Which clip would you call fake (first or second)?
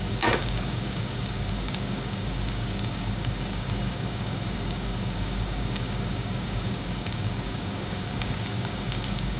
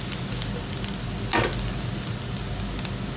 first